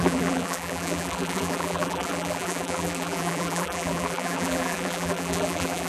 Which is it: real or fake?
fake